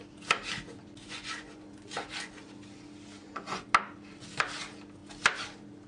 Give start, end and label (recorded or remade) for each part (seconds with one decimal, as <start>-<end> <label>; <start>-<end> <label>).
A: 0.0-1.0 recorded; 1.0-2.5 remade; 2.5-3.2 recorded; 3.2-3.7 remade; 3.7-5.9 recorded